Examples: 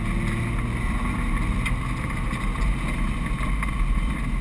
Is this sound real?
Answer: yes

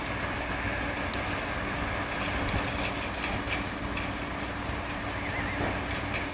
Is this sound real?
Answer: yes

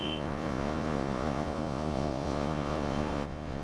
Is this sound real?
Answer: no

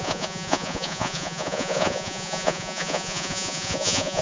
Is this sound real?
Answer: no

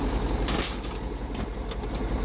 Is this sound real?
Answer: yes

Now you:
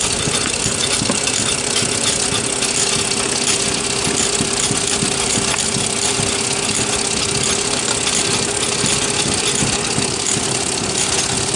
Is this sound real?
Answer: yes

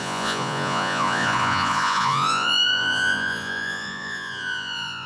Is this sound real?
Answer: no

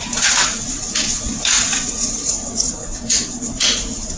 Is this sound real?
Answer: no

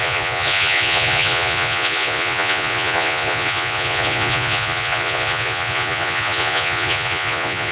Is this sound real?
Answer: no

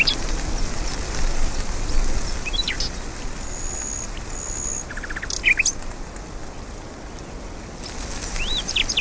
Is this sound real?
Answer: yes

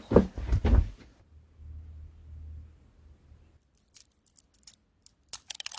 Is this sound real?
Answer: yes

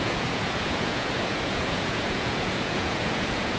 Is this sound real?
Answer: no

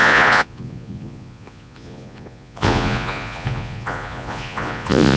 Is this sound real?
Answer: no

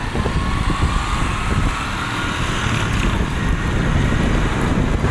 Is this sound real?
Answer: yes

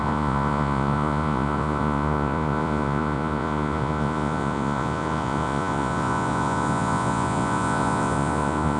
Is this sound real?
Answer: no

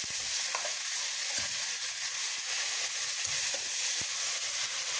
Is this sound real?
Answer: no